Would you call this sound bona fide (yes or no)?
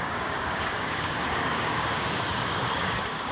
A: no